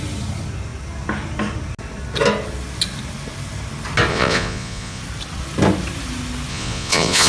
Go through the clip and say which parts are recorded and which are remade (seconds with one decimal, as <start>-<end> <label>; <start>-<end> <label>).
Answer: 0.0-4.1 recorded; 4.1-5.0 remade; 5.0-6.5 recorded; 6.5-7.3 remade

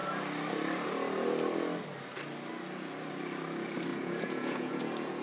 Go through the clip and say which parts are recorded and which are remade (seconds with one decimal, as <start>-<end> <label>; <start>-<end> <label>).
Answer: 0.0-3.9 recorded; 3.9-4.8 remade; 4.8-5.2 recorded

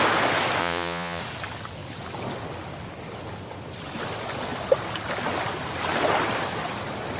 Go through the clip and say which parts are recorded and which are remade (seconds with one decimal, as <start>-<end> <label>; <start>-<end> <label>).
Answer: 0.0-0.6 recorded; 0.6-1.2 remade; 1.2-7.2 recorded

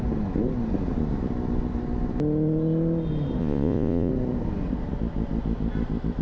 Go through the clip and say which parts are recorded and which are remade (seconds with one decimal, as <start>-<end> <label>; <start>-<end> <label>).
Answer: 0.0-3.4 recorded; 3.4-4.1 remade; 4.1-6.2 recorded

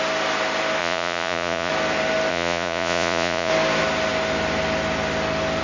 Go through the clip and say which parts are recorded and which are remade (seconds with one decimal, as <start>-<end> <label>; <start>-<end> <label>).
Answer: 0.0-0.8 recorded; 0.8-1.7 remade; 1.7-2.3 recorded; 2.3-3.5 remade; 3.5-5.6 recorded

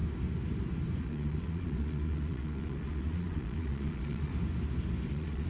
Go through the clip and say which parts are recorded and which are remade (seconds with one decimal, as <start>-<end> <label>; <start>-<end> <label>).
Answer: 0.0-1.0 recorded; 1.0-4.3 remade; 4.3-5.1 recorded; 5.1-5.5 remade

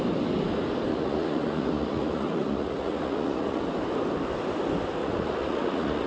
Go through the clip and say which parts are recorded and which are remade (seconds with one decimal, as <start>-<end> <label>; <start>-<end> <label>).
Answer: 0.0-0.9 recorded; 0.9-3.6 remade; 3.6-5.0 recorded; 5.0-6.1 remade

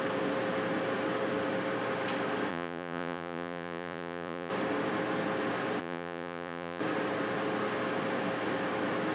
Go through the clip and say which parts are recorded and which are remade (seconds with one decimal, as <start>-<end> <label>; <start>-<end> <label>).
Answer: 0.0-2.5 recorded; 2.5-4.5 remade; 4.5-5.8 recorded; 5.8-6.8 remade; 6.8-9.1 recorded